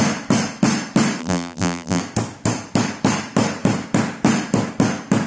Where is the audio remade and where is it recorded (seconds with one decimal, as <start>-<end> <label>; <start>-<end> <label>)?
0.0-1.2 recorded; 1.2-2.0 remade; 2.0-5.3 recorded